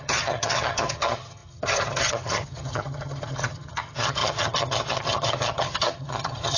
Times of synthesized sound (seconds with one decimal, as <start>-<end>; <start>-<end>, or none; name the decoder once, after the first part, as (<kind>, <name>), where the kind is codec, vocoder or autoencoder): 0.0-6.6 (vocoder, HiFi-GAN)